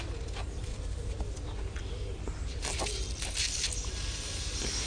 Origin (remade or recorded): recorded